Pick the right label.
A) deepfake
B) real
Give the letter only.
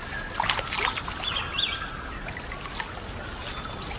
B